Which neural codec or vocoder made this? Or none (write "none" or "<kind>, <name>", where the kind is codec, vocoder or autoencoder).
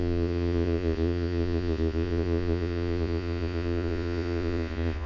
vocoder, Vocos